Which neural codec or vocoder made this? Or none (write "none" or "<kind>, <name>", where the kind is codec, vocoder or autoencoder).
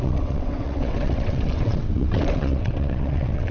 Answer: vocoder, WaveNeXt